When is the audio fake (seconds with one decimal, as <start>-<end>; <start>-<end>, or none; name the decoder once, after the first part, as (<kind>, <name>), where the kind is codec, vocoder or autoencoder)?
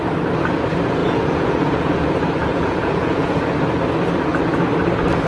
1.0-1.9 (vocoder, Vocos); 2.5-3.4